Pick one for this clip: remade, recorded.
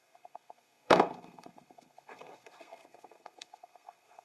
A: remade